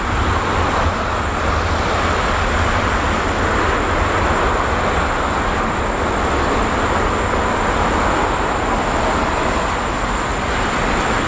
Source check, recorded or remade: recorded